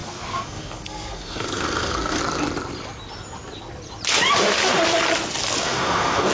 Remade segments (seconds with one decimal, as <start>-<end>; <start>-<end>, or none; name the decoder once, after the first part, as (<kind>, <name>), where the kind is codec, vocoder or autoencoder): 0.0-2.2 (codec, SNAC); 5.6-6.3